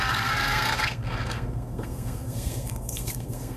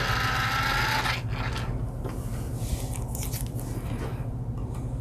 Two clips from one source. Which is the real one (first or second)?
second